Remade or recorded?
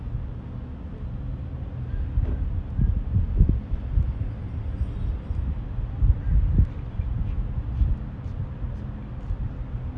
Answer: recorded